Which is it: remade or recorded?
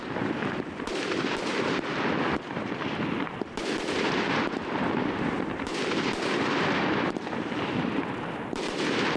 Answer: remade